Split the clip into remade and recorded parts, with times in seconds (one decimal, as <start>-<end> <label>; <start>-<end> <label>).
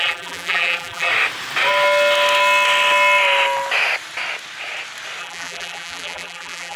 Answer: 0.0-1.1 remade; 1.1-5.2 recorded; 5.2-6.8 remade